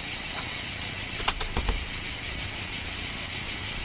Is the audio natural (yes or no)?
no